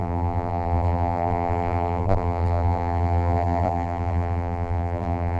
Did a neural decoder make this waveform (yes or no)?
yes